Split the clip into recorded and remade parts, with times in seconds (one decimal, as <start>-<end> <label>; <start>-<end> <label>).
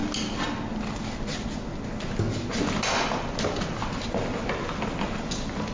0.0-5.7 recorded